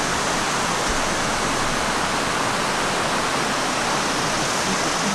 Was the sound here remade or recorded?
recorded